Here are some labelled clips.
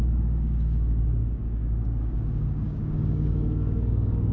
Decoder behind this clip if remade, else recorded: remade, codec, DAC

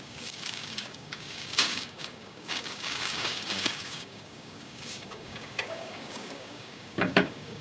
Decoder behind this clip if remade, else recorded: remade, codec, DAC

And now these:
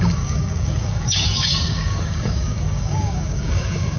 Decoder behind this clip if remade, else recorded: remade, codec, DAC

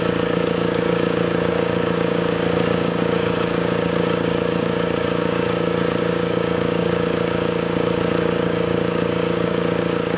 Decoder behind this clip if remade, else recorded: remade, codec, DAC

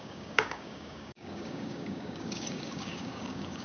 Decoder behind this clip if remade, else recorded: remade, codec, DAC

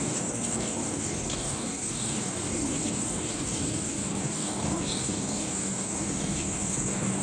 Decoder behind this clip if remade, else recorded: remade, codec, DAC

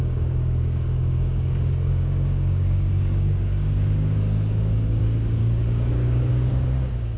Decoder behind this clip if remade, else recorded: remade, codec, DAC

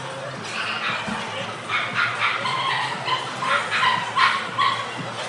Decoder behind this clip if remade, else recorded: recorded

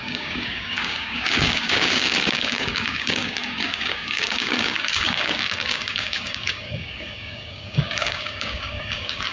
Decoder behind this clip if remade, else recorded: remade, codec, DAC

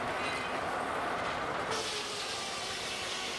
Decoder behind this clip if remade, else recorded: recorded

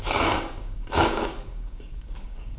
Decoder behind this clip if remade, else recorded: remade, codec, DAC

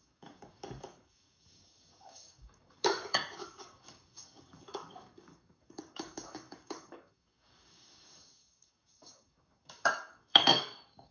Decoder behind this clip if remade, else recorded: remade, codec, DAC